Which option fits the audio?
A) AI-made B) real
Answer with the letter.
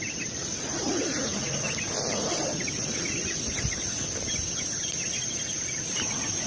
B